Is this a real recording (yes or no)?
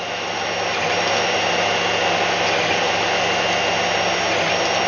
yes